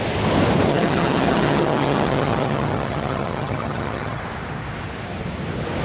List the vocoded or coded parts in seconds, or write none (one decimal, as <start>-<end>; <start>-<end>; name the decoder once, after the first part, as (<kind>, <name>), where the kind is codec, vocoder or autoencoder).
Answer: 0.7-4.2 (vocoder, HiFi-GAN)